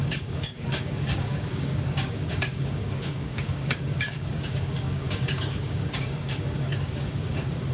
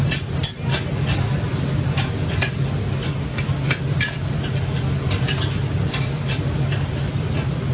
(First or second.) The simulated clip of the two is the first